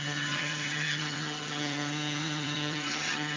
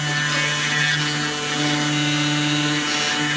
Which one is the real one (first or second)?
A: second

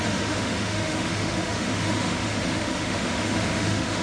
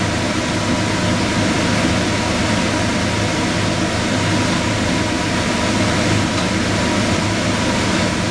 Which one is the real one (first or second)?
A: second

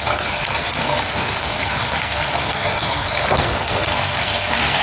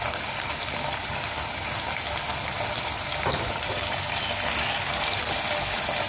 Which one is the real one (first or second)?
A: second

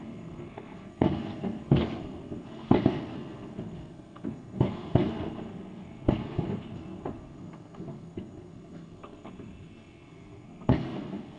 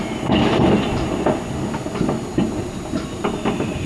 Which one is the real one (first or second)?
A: second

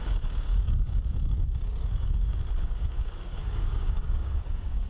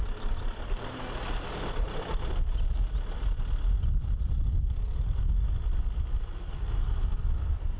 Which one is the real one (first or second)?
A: second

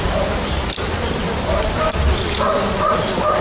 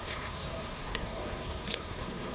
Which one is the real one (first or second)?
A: first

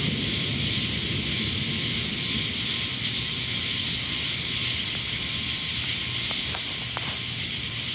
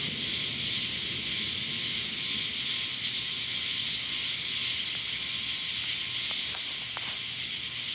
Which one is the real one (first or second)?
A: second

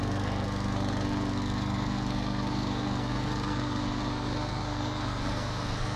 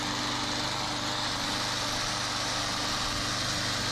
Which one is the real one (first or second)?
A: second